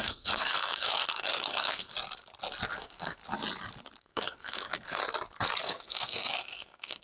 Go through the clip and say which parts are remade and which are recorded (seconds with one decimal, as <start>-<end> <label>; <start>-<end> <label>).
0.0-1.9 remade; 1.9-2.8 recorded; 2.8-3.2 remade; 3.2-4.0 recorded; 4.0-5.0 remade; 5.0-5.6 recorded; 5.6-7.0 remade